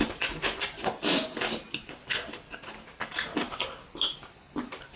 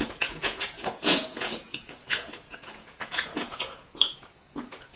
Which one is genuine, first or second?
first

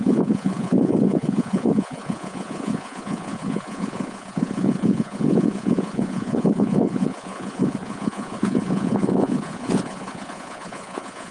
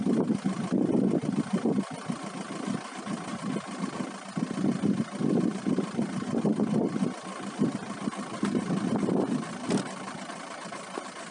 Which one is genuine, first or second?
second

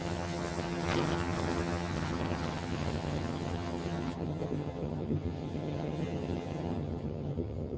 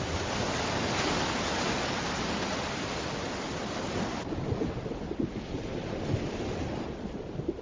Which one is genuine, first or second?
second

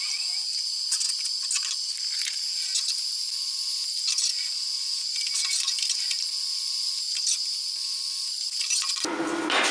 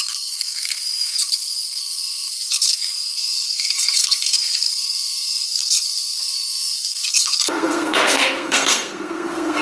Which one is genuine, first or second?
first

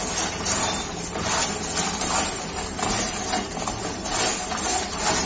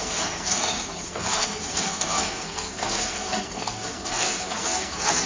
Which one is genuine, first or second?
first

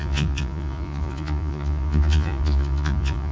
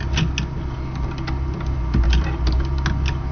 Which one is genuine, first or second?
second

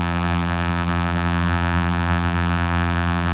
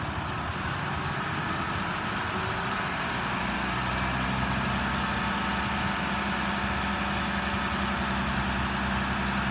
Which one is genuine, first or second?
second